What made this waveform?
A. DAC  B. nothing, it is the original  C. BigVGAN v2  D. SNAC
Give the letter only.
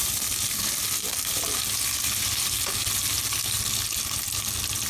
B